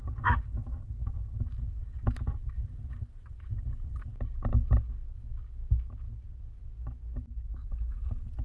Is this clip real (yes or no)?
yes